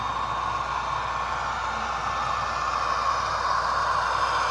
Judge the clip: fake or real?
real